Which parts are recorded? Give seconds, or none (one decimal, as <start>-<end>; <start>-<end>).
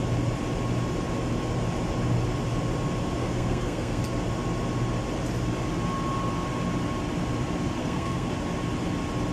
0.0-3.2; 4.0-7.8; 8.3-9.3